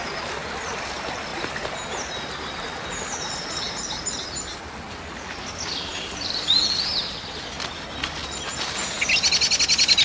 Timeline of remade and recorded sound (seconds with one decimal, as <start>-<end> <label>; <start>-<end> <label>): 0.0-10.0 recorded